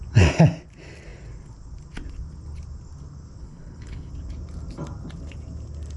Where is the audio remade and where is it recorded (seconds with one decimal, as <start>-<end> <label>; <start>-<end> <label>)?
0.0-3.4 recorded; 3.4-4.1 remade; 4.1-6.0 recorded